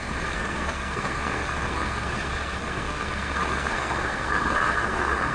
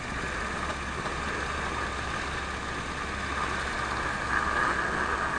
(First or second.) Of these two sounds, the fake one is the first